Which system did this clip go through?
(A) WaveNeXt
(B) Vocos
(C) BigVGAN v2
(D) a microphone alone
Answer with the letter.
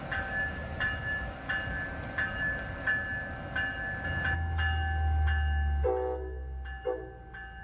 D